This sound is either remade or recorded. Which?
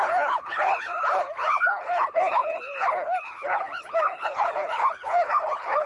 remade